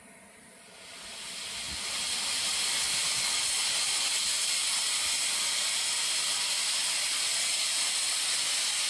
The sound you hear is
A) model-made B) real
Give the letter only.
B